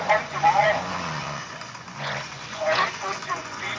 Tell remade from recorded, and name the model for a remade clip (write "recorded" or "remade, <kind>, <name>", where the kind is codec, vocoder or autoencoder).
remade, vocoder, Vocos